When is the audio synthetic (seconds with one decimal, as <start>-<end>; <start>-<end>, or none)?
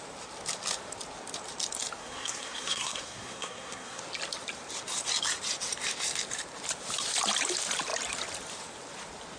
2.0-4.0